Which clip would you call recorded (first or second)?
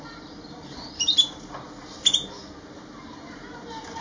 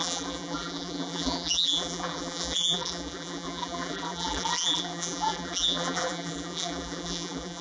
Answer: first